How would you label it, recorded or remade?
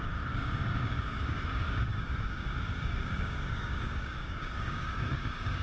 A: remade